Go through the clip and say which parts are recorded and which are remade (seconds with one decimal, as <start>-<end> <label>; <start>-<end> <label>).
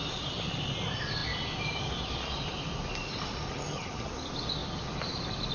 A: 0.0-3.5 recorded; 3.5-4.1 remade; 4.1-5.5 recorded